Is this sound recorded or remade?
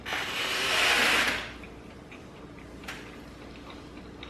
recorded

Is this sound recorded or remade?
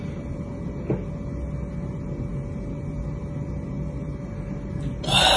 recorded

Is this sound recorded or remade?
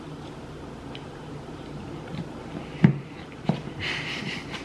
remade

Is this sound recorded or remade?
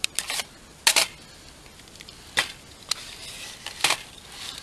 recorded